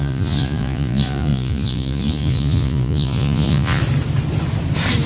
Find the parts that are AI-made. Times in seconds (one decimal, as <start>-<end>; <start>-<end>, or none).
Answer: 0.0-3.8